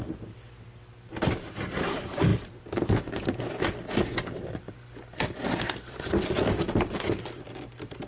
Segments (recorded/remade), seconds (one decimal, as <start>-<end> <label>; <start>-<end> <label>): 0.0-4.1 recorded; 4.1-8.1 remade